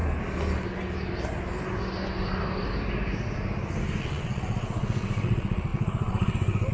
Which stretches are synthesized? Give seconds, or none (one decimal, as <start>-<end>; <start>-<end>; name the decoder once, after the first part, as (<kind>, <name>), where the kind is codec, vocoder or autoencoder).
4.0-6.7 (vocoder, WaveNeXt)